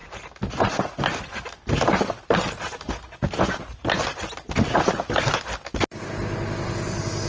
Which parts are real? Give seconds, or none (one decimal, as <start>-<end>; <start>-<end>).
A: 0.0-7.3